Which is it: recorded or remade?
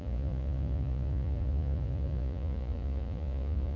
remade